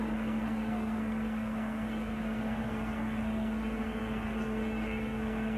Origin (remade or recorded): remade